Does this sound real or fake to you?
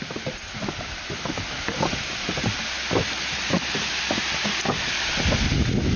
real